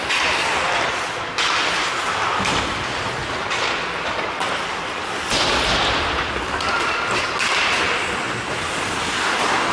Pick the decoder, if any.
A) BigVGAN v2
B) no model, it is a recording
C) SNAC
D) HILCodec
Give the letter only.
B